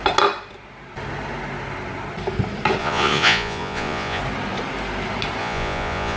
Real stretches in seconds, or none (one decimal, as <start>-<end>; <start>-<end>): 0.0-2.8; 4.2-5.4

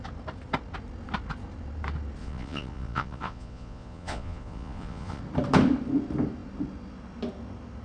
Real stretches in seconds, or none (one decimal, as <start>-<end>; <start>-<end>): 0.0-2.2; 5.2-7.8

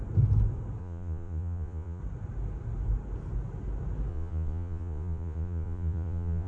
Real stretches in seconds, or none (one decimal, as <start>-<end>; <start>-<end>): 0.0-0.8; 2.0-4.1

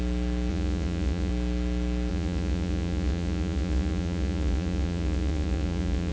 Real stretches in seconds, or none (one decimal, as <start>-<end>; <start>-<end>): 0.0-0.5; 1.3-2.1

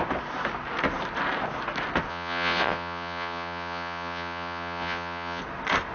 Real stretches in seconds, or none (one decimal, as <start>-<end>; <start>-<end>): 0.0-2.1; 5.4-5.9